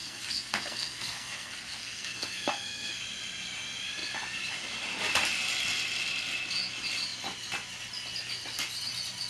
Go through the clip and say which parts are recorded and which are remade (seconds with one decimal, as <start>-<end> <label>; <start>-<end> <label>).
0.0-3.0 remade; 3.0-9.3 recorded